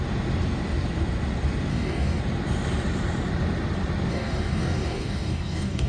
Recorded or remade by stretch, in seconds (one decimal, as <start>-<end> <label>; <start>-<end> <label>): 0.0-1.7 recorded; 1.7-2.2 remade; 2.2-4.1 recorded; 4.1-5.9 remade